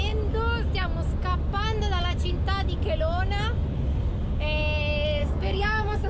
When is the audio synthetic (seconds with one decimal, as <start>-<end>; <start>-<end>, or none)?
5.2-6.1